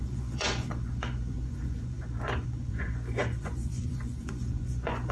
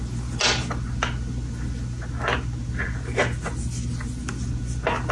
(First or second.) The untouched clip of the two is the second